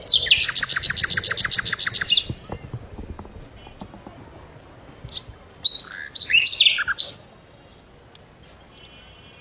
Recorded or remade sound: recorded